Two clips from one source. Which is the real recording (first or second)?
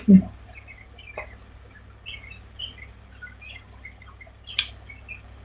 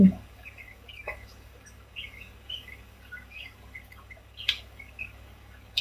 first